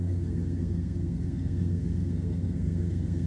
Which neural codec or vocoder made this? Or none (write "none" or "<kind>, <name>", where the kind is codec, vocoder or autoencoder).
codec, SNAC